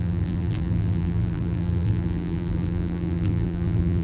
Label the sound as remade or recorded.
remade